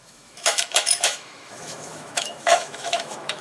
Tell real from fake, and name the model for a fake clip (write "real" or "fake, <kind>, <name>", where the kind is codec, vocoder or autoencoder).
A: fake, autoencoder, DAC-VAE